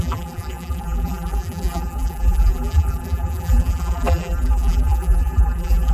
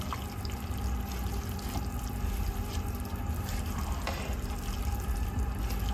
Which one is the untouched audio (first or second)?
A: second